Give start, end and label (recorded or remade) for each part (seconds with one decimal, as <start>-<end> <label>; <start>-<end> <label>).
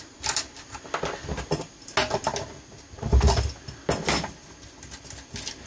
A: 0.0-5.7 recorded